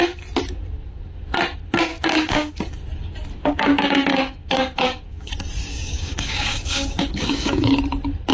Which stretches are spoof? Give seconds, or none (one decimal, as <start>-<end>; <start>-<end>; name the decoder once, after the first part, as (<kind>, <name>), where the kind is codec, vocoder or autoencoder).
1.9-2.6 (codec, DAC); 3.4-5.3; 5.7-7.8